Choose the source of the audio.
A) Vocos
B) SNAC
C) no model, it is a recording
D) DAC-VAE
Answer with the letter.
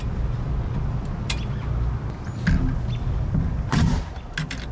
C